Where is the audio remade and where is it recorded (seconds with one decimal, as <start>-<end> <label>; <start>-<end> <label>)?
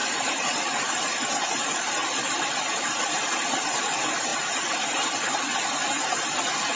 0.0-1.3 remade; 1.3-2.0 recorded; 2.0-3.0 remade; 3.0-6.8 recorded